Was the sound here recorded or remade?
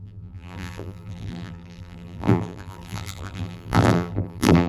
remade